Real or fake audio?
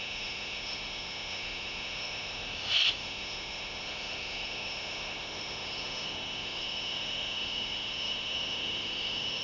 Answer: fake